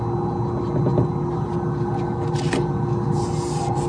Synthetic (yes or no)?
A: no